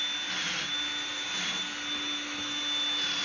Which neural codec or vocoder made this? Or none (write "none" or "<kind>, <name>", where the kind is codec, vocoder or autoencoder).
none